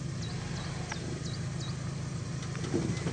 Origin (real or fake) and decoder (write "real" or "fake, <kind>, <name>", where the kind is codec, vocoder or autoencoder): real